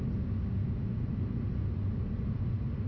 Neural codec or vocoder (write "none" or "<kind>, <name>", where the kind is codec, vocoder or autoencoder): none